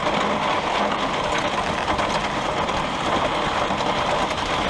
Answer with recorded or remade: recorded